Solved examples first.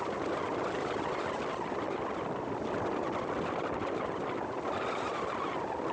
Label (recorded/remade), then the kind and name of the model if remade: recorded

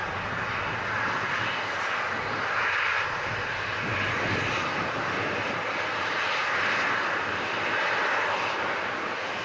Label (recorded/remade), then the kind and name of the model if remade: recorded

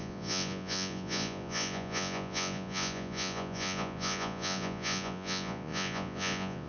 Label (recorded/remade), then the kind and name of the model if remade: remade, vocoder, Vocos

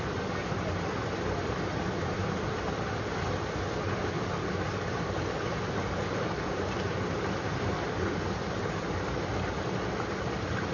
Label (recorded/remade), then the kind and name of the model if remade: recorded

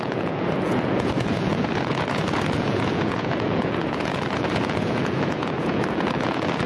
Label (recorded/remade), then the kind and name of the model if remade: remade, vocoder, Vocos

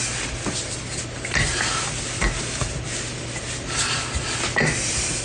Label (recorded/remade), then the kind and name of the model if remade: recorded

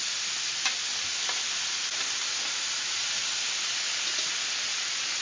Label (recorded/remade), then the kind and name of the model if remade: recorded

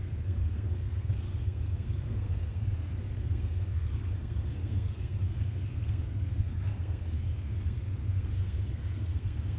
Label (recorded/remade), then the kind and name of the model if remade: remade, codec, SNAC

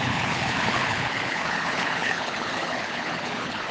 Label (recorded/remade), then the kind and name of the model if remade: remade, codec, HILCodec